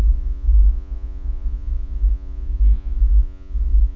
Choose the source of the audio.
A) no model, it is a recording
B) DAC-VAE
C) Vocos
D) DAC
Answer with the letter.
C